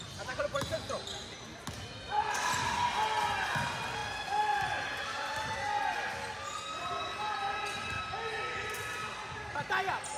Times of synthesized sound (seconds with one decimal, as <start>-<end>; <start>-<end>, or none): none